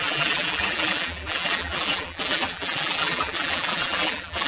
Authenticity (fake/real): fake